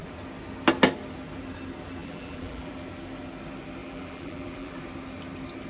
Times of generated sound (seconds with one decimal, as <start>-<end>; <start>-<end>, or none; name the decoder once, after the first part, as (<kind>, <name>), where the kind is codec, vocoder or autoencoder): 2.0-2.7 (vocoder, BigVGAN v2); 3.8-4.8